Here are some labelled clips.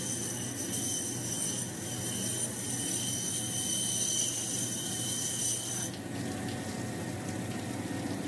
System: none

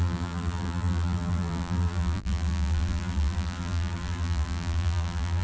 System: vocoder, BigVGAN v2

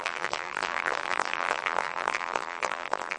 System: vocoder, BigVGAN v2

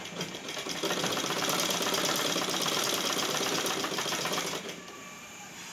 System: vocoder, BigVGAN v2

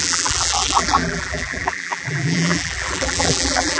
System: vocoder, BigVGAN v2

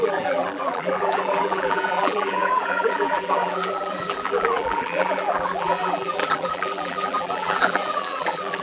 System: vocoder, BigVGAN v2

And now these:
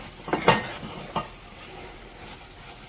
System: none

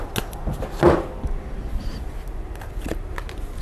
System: none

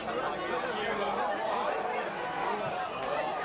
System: none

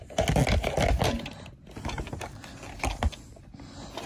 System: none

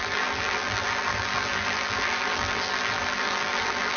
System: vocoder, BigVGAN v2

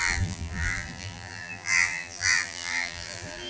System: vocoder, BigVGAN v2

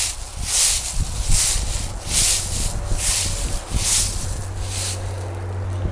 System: none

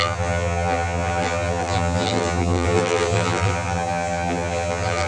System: vocoder, BigVGAN v2